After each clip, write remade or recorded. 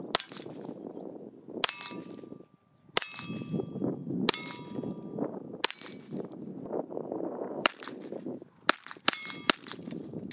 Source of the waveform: recorded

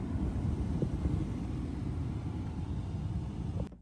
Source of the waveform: recorded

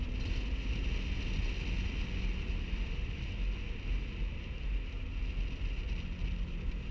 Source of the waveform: recorded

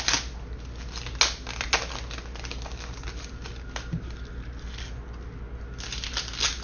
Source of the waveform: recorded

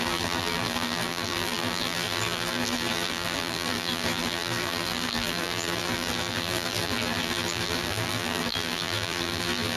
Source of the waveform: remade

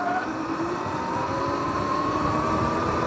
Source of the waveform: remade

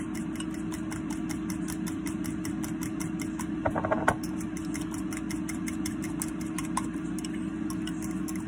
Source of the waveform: recorded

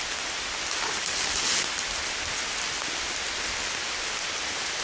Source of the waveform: recorded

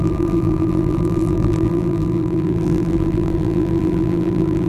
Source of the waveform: remade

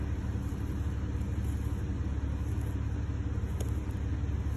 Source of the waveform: recorded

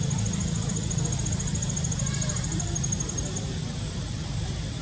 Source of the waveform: remade